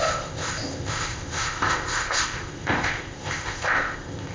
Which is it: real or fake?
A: fake